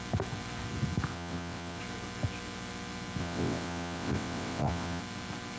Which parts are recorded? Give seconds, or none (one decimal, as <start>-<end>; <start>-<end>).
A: 0.0-1.1; 1.8-3.2; 5.0-5.6